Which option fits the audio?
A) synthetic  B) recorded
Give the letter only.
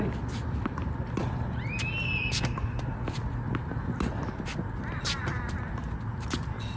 B